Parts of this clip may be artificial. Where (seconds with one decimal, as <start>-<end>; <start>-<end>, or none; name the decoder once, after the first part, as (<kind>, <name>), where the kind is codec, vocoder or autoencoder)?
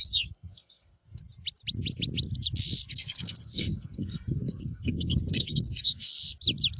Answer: 0.0-1.2 (codec, SNAC); 2.9-6.1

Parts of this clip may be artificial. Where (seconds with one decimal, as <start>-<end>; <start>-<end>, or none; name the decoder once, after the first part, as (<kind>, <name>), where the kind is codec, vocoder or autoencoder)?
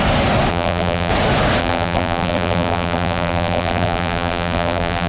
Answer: 0.5-1.1 (vocoder, BigVGAN v2); 1.6-5.1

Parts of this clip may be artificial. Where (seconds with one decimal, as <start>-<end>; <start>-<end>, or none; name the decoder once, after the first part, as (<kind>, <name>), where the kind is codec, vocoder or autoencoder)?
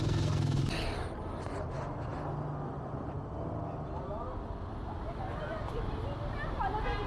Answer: 0.0-0.6 (codec, SNAC)